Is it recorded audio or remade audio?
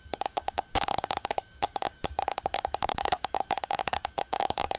remade